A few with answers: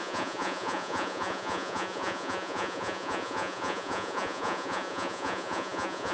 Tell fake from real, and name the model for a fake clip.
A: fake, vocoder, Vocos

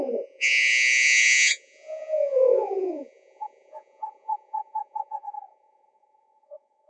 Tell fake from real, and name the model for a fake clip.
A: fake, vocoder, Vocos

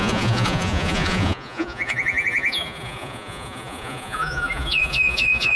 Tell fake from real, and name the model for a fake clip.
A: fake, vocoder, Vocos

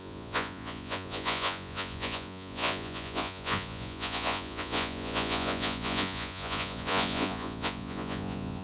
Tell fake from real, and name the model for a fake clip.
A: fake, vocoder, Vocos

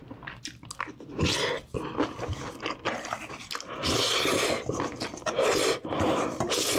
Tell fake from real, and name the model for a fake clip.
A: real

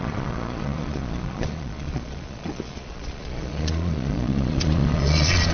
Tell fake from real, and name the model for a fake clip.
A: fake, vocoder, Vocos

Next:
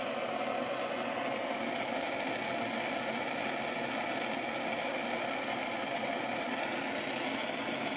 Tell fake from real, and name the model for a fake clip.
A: real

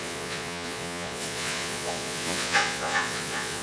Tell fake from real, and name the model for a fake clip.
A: fake, vocoder, Vocos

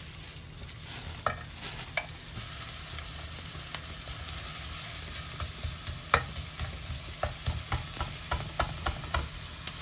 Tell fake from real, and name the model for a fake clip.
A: real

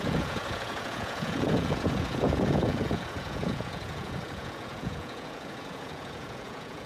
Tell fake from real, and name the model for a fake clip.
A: fake, vocoder, Vocos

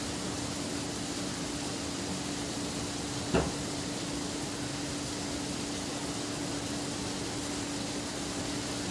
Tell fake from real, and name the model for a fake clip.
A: real